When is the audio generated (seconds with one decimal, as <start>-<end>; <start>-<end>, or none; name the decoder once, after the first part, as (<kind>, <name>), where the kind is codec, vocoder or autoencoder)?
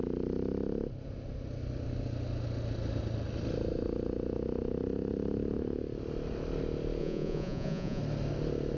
7.0-8.0 (vocoder, Vocos)